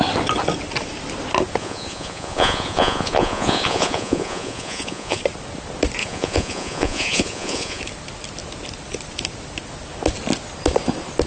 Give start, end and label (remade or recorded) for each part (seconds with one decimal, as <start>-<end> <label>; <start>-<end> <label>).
0.0-1.6 recorded; 1.6-5.2 remade; 5.2-6.0 recorded; 6.0-7.8 remade; 7.8-11.3 recorded

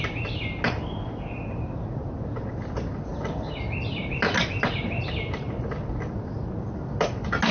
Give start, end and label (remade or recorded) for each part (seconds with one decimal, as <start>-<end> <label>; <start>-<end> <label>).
0.0-7.5 recorded

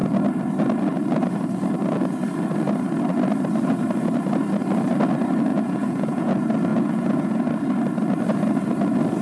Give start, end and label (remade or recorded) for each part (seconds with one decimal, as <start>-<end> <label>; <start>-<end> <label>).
0.0-5.5 recorded; 5.5-6.3 remade; 6.3-6.7 recorded; 6.7-7.4 remade; 7.4-9.2 recorded

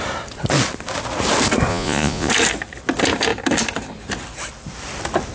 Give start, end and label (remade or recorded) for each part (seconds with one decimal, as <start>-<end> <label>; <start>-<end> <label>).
0.0-1.7 recorded; 1.7-2.3 remade; 2.3-5.3 recorded

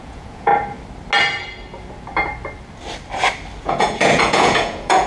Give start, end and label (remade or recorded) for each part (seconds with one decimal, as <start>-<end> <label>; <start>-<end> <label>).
0.0-0.5 remade; 0.5-3.6 recorded; 3.6-5.1 remade

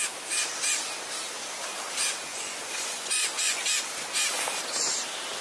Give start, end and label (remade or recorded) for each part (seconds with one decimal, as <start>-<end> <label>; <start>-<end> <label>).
0.0-2.3 recorded; 2.3-3.6 remade; 3.6-5.4 recorded